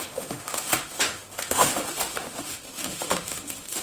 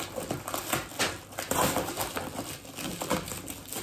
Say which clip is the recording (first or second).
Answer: second